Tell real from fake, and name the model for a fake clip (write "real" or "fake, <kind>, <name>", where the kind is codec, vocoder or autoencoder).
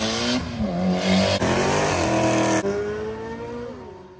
real